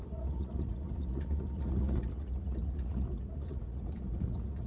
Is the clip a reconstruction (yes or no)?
yes